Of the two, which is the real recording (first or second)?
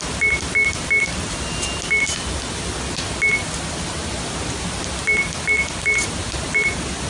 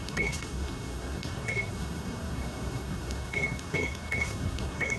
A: first